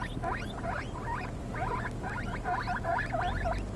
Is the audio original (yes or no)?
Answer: yes